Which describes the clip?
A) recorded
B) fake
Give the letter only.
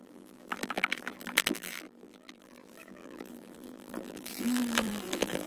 B